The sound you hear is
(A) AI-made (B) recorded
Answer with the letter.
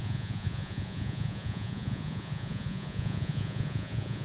A